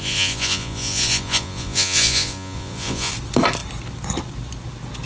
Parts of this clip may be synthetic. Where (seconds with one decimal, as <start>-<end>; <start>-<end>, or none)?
0.0-3.1